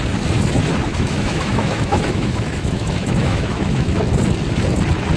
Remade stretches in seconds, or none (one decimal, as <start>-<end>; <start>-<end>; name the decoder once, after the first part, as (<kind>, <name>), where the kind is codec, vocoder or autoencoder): 0.9-4.0 (autoencoder, DAC-VAE)